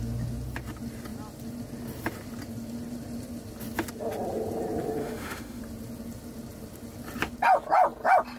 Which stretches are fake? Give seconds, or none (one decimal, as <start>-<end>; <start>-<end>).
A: 5.0-5.6